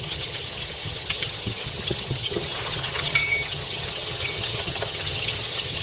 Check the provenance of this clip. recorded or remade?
remade